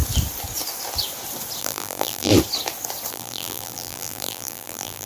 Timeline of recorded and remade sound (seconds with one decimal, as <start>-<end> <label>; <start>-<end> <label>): 0.0-1.6 recorded; 1.6-2.3 remade; 2.3-3.1 recorded; 3.1-5.0 remade